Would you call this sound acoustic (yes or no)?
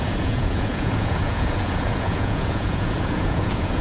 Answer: no